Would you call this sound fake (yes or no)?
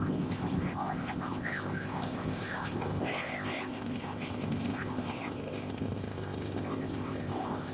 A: yes